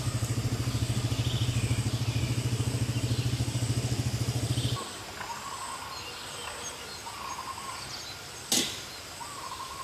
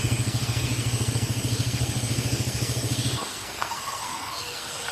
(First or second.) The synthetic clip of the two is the second